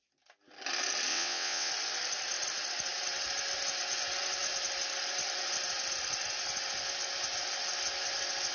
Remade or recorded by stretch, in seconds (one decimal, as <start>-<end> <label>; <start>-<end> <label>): 0.0-1.1 recorded; 1.1-1.7 remade; 1.7-8.5 recorded